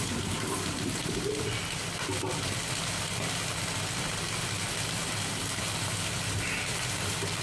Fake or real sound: real